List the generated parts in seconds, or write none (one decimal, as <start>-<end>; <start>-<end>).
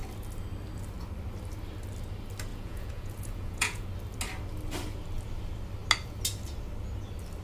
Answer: 2.5-3.9